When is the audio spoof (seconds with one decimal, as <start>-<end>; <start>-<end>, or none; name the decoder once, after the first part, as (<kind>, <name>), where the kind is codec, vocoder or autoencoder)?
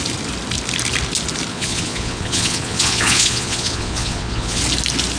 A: 1.5-4.6 (vocoder, Vocos)